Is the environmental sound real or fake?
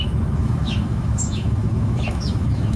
fake